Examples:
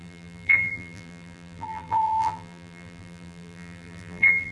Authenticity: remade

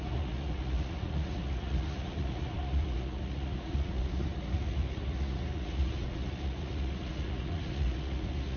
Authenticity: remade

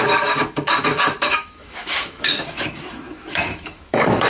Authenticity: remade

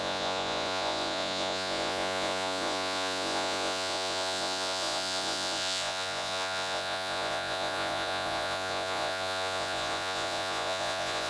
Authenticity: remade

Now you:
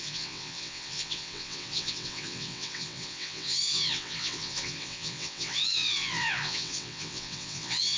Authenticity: remade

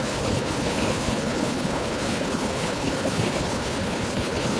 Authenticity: remade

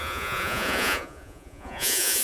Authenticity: remade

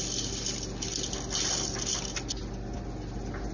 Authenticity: recorded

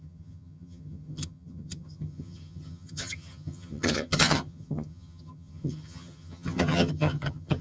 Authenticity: remade